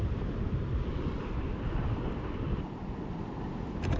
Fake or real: real